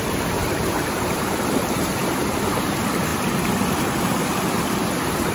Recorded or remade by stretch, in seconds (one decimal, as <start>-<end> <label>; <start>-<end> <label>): 0.0-5.3 remade